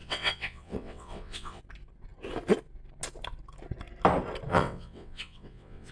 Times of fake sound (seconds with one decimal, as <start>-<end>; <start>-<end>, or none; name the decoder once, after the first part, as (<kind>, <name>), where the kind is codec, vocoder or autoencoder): 0.0-1.6 (vocoder, WaveNeXt); 4.5-5.9